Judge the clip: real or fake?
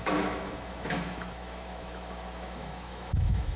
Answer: fake